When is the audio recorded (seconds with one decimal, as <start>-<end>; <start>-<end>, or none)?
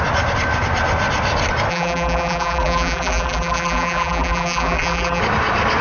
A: 0.0-1.7; 5.2-5.8